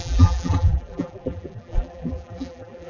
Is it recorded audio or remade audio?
remade